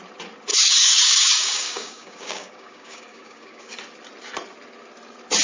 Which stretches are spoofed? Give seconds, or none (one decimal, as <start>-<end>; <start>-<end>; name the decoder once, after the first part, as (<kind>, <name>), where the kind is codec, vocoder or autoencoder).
0.5-3.7 (codec, DAC)